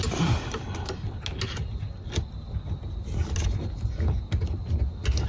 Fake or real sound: real